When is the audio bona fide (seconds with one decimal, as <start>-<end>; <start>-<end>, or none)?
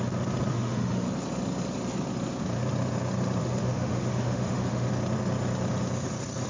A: 0.0-0.5; 1.1-3.4; 4.9-6.5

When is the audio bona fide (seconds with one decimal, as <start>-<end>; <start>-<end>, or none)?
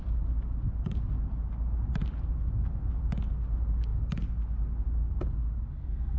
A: 0.0-6.2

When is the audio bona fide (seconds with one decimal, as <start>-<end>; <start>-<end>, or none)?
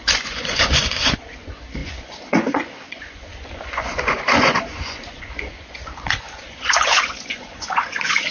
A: none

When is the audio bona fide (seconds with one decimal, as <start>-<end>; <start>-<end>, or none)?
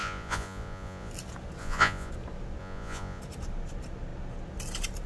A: 1.1-1.6; 2.1-2.6; 3.2-5.1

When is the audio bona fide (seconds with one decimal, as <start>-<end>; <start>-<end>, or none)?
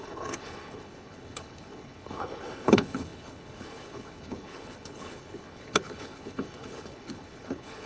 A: none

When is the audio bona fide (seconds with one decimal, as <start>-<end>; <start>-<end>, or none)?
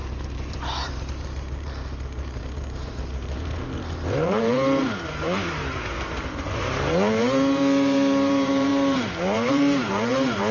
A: none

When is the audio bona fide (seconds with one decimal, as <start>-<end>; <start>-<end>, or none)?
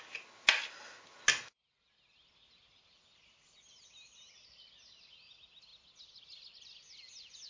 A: 0.0-7.5